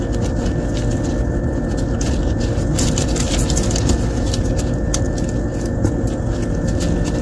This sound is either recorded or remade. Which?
recorded